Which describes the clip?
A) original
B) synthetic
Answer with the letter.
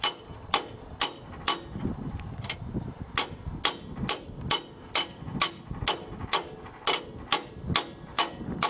A